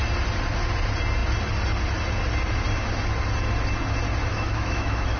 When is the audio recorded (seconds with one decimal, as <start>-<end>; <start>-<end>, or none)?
0.0-4.3